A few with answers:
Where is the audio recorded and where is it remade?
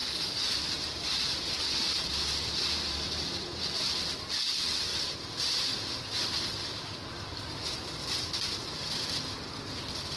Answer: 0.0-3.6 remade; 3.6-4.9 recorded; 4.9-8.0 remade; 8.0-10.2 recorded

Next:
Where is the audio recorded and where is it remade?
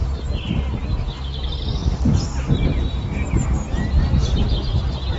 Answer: 0.0-1.8 recorded; 1.8-4.2 remade; 4.2-5.2 recorded